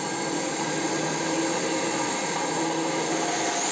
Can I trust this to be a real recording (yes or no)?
yes